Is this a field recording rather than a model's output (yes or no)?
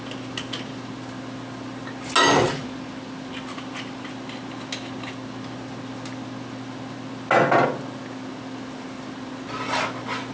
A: yes